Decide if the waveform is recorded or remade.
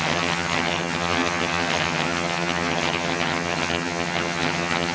remade